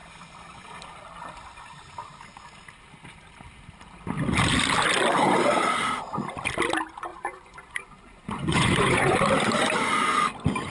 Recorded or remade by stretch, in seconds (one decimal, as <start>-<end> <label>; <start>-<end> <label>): 0.0-7.1 recorded; 7.1-9.2 remade; 9.2-10.7 recorded